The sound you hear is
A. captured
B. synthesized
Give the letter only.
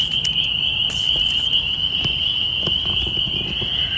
A